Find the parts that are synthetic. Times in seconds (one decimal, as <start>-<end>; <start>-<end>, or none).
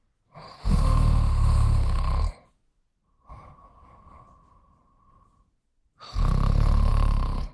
0.6-2.0